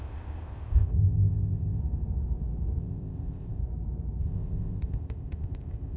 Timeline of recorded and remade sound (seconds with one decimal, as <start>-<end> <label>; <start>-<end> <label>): 0.0-1.8 remade; 1.8-2.8 recorded; 2.8-3.6 remade; 3.6-4.2 recorded; 4.2-6.0 remade